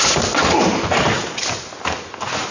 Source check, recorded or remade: recorded